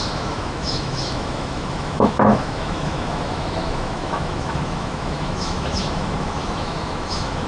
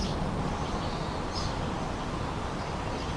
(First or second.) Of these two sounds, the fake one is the first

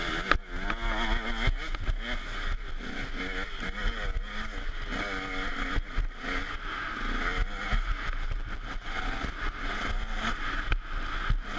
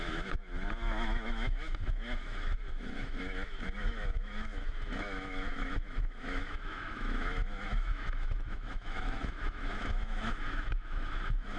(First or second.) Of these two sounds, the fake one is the second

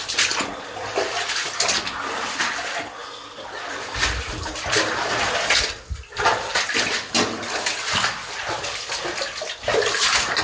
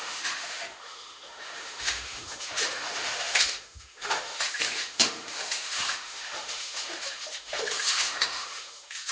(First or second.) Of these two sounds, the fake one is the second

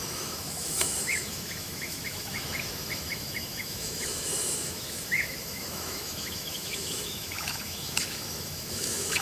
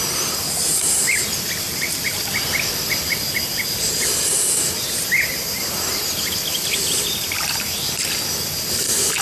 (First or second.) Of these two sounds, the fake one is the first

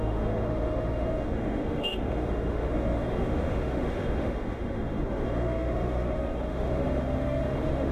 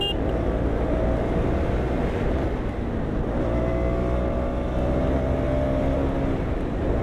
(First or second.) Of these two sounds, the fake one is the first